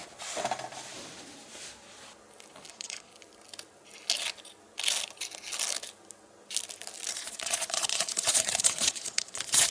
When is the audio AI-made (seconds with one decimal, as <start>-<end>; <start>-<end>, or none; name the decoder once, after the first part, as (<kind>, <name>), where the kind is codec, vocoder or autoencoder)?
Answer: 2.7-3.1 (vocoder, Vocos); 7.1-9.7